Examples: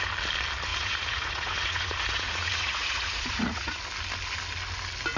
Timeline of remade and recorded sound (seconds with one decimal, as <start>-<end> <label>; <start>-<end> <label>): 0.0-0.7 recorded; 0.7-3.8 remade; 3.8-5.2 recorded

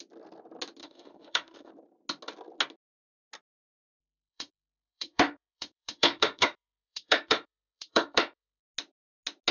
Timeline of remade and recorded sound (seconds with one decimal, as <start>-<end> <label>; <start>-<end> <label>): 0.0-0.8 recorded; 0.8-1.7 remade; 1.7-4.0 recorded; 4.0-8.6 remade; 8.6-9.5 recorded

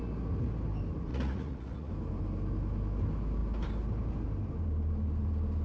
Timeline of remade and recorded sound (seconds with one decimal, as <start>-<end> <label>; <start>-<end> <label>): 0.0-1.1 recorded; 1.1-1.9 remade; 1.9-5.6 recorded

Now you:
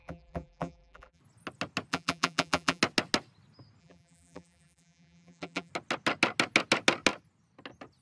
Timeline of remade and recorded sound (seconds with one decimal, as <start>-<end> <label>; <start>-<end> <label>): 0.0-1.2 remade; 1.2-1.9 recorded; 1.9-2.8 remade; 2.8-3.8 recorded; 3.8-5.7 remade; 5.7-8.0 recorded